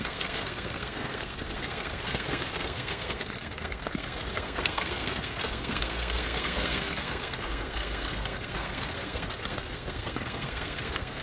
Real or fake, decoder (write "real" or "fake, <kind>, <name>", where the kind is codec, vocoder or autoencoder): fake, codec, SNAC